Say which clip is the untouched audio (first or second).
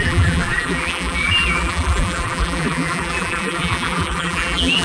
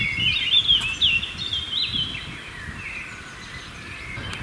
second